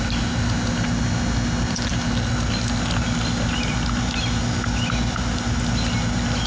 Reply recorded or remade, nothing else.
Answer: recorded